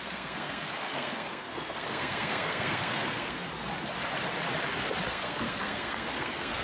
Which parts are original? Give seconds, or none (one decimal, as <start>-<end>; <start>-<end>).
3.4-5.1